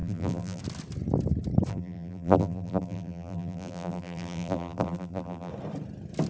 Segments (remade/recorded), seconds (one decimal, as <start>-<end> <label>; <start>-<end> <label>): 0.0-0.6 remade; 0.6-1.7 recorded; 1.7-5.5 remade; 5.5-6.3 recorded